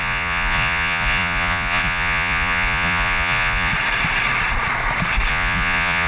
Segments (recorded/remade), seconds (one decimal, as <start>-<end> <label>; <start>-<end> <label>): 0.0-3.7 remade; 3.7-5.3 recorded; 5.3-6.1 remade